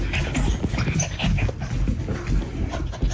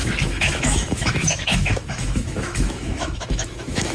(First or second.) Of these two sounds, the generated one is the second